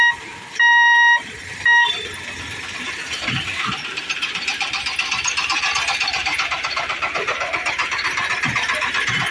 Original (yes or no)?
no